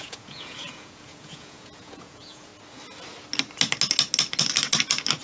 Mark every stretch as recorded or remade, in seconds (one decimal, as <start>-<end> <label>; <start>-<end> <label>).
0.0-2.5 remade; 2.5-5.2 recorded